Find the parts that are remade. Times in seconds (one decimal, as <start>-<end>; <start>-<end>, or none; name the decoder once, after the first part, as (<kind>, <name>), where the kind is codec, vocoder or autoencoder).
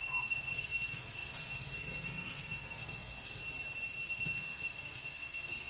0.0-3.4 (codec, SNAC); 4.1-5.7